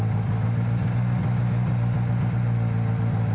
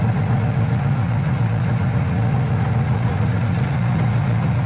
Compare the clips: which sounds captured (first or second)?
first